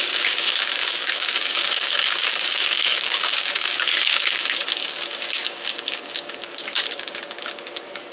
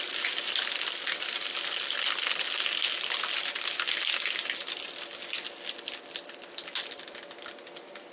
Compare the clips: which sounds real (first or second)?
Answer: second